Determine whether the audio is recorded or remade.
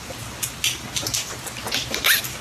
recorded